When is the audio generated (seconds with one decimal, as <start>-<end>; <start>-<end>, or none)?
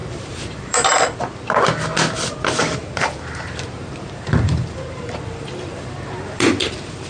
0.0-1.0; 2.8-7.1